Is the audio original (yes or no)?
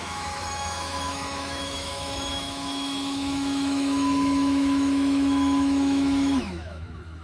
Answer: no